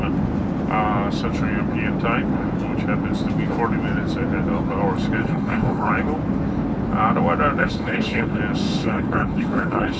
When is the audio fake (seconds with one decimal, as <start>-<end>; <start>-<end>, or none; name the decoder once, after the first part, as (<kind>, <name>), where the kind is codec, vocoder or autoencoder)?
5.2-5.9 (codec, HILCodec); 7.6-8.4; 8.8-10.0